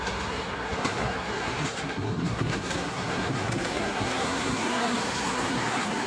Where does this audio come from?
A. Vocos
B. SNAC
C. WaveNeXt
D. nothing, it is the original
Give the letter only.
B